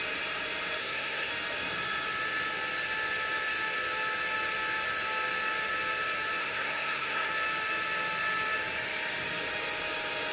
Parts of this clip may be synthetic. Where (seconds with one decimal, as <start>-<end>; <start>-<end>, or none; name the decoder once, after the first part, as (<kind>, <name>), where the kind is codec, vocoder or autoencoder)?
0.8-1.3 (codec, SNAC); 6.4-7.3